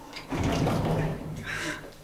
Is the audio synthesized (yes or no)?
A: yes